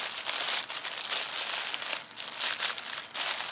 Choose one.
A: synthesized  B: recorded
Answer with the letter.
B